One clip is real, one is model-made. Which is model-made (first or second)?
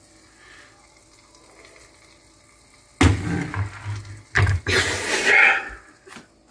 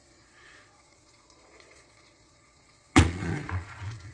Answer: second